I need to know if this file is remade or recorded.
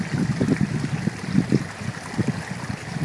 recorded